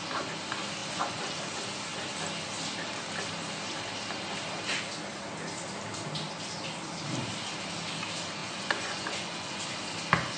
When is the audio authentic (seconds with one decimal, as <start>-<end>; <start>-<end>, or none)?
0.0-0.8; 1.4-8.4; 9.6-10.4